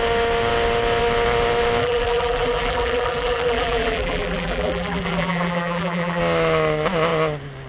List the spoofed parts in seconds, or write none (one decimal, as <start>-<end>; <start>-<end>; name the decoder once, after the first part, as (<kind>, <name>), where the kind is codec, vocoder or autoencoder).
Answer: 1.8-6.2 (vocoder, BigVGAN v2)

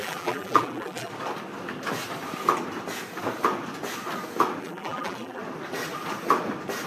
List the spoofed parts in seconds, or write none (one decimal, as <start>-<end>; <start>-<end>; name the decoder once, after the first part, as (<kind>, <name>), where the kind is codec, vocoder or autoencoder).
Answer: 0.0-1.1 (vocoder, BigVGAN v2); 4.6-5.4

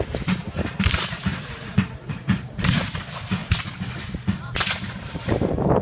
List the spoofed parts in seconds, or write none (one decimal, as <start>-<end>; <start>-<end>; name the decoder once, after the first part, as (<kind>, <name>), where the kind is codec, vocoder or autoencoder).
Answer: 0.0-1.3 (vocoder, BigVGAN v2); 2.1-3.4; 4.8-5.8

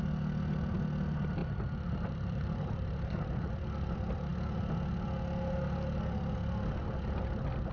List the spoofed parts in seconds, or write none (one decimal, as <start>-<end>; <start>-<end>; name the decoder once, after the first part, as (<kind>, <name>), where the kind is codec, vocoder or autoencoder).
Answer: 1.4-3.5 (vocoder, BigVGAN v2)

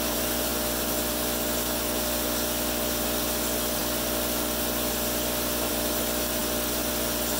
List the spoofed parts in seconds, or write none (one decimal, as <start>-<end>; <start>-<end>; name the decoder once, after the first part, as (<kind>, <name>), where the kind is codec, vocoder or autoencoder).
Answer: none

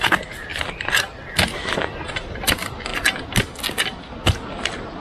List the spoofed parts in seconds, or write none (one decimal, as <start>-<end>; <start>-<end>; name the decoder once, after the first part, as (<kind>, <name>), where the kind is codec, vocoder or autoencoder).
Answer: 0.0-0.5 (vocoder, BigVGAN v2); 2.4-2.9